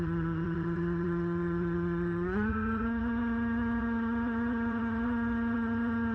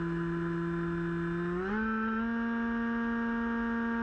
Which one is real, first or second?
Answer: second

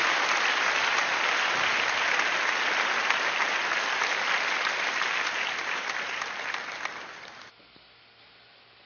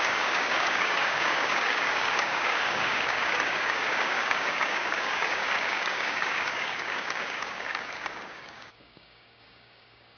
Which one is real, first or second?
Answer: first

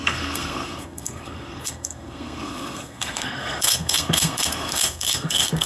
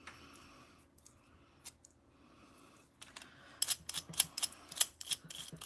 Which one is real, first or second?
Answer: second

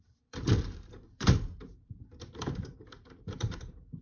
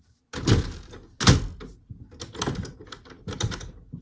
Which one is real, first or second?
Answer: second